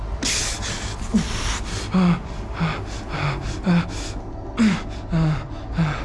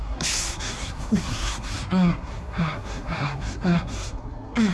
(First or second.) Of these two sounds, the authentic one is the first